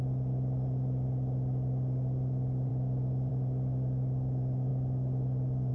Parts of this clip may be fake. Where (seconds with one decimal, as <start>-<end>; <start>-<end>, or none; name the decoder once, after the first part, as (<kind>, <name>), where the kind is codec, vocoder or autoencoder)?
none